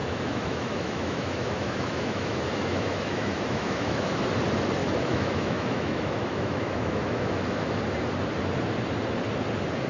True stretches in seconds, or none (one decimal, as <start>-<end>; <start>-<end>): 4.2-4.8; 7.8-9.9